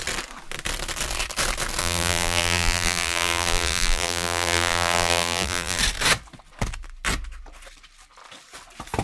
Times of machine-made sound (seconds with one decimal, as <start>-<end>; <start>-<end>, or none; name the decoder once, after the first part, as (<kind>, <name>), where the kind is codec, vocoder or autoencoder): 1.8-5.8 (vocoder, BigVGAN v2)

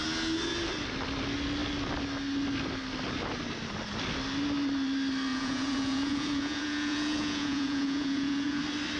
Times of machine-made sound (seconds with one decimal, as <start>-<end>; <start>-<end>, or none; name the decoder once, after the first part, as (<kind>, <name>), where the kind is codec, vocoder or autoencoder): 5.3-8.6 (vocoder, Vocos)

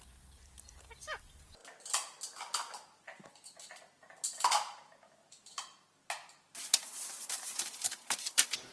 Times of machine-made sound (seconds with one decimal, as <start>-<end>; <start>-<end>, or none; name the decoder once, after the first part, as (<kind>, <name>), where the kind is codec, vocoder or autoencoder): 6.8-8.7 (vocoder, BigVGAN v2)

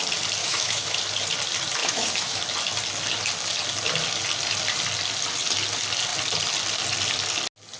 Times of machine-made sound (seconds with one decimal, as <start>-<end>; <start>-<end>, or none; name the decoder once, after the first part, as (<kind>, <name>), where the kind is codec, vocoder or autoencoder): 0.4-1.0 (autoencoder, DAC-VAE); 1.8-2.4

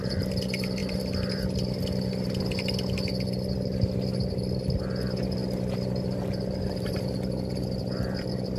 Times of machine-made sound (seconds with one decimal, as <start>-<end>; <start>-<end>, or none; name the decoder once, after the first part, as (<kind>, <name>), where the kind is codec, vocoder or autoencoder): none

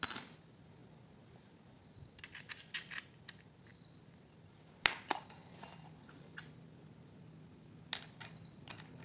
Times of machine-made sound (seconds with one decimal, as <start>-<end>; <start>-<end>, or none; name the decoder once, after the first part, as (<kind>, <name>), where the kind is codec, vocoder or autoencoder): none